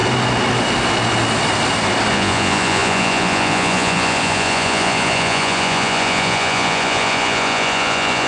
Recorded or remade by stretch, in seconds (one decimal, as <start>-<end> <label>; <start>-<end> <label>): 0.0-2.1 recorded; 2.1-8.3 remade